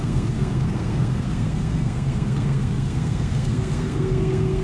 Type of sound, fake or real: fake